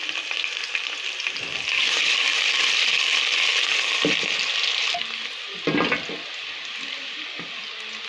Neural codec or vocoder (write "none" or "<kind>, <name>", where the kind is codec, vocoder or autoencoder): none